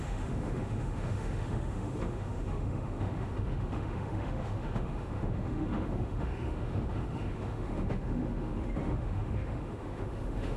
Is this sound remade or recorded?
remade